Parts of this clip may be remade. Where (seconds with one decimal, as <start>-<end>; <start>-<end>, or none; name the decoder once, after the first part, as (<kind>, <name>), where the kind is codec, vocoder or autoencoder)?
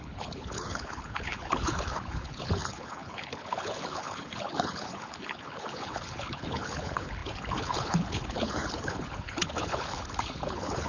0.0-10.9 (codec, HILCodec)